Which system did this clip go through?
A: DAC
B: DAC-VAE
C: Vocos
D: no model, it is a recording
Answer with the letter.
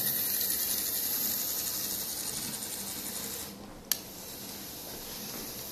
D